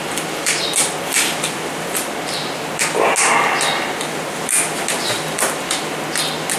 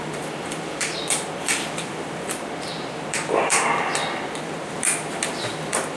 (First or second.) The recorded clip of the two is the first